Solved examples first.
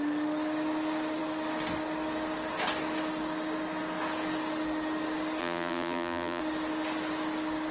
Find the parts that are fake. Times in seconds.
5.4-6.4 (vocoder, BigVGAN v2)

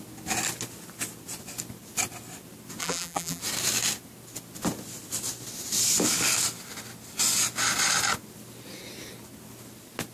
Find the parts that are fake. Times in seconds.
2.8-3.4 (vocoder, BigVGAN v2)

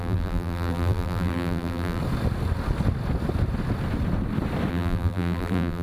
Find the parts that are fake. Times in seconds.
0.0-2.0 (vocoder, BigVGAN v2); 4.7-5.8

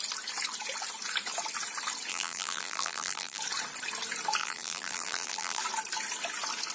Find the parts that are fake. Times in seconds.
2.1-3.4 (vocoder, BigVGAN v2); 4.4-5.6

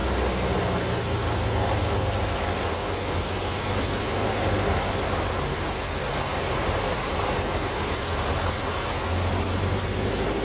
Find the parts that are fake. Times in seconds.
6.3-7.7 (vocoder, BigVGAN v2)

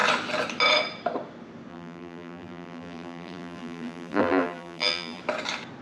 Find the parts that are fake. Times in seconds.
1.7-5.2 (vocoder, BigVGAN v2)

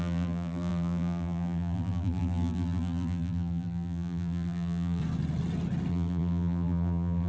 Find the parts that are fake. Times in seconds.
0.0-5.0 (vocoder, BigVGAN v2); 5.9-7.3

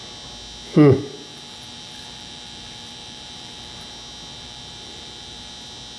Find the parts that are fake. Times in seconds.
1.3-3.9 (vocoder, BigVGAN v2); 4.3-5.5